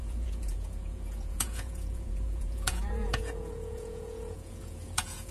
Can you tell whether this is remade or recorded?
remade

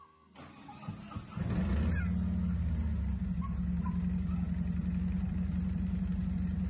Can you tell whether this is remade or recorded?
recorded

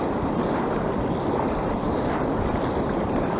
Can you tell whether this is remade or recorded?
recorded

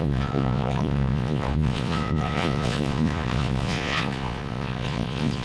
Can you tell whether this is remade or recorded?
remade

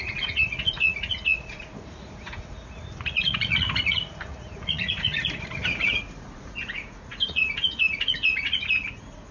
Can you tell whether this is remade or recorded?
remade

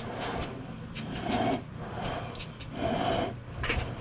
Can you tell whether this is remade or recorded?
recorded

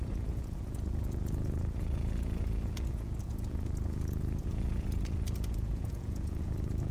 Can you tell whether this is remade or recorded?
remade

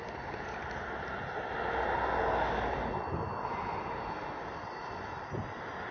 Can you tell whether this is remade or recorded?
recorded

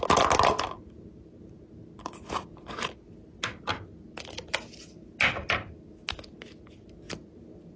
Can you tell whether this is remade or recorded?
recorded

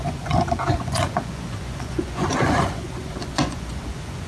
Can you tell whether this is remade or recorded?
remade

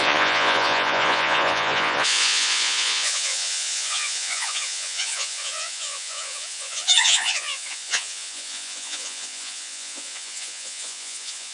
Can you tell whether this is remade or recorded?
remade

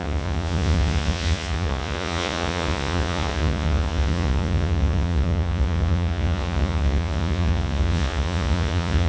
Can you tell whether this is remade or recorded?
remade